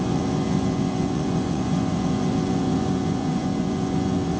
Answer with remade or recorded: remade